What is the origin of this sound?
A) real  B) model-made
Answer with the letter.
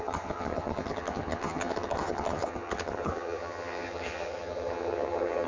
B